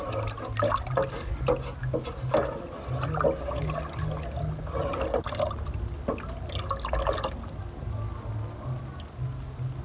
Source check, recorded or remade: recorded